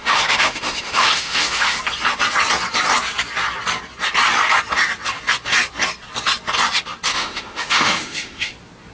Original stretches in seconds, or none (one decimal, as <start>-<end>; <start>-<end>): 1.8-7.1; 8.5-8.9